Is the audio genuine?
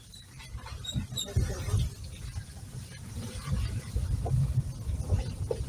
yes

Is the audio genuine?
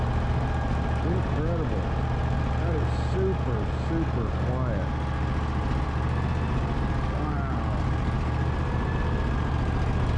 yes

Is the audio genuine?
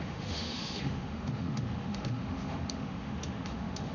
no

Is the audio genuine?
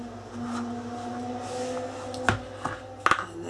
yes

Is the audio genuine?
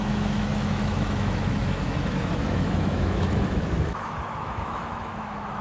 no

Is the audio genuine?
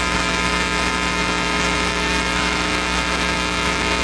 no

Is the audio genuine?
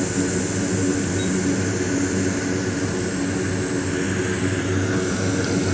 yes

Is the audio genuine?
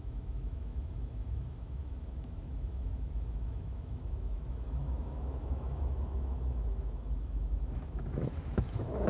no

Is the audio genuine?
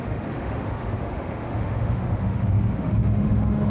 no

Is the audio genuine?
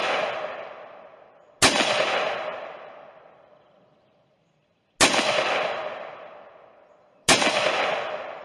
yes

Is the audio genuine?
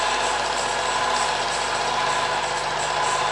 yes